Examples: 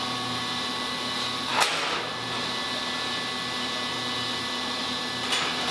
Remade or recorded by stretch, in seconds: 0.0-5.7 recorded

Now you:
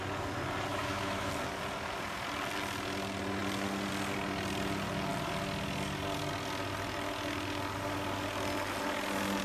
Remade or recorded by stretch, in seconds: 0.0-0.7 recorded; 0.7-1.3 remade; 1.3-9.4 recorded

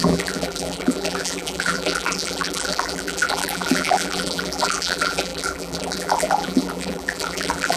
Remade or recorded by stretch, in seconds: 0.0-7.8 remade

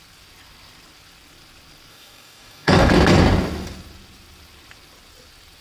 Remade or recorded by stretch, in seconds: 0.0-1.9 recorded; 1.9-2.9 remade; 2.9-5.6 recorded